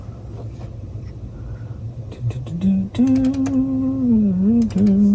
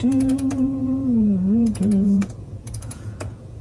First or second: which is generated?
second